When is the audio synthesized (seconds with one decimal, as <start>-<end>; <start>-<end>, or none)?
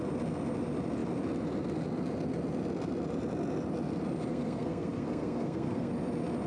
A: 4.3-5.9